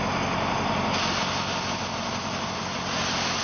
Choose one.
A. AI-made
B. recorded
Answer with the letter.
B